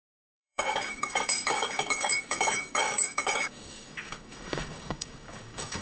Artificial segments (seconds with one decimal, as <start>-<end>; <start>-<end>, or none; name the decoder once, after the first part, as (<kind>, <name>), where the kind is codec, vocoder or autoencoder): 0.0-5.8 (codec, DAC)